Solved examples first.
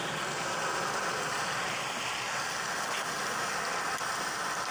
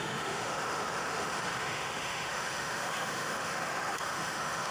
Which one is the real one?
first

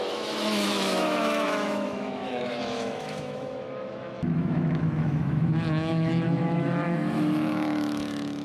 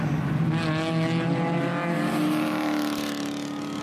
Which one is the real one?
second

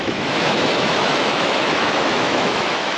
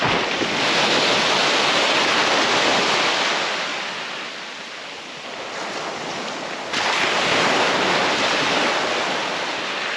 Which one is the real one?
second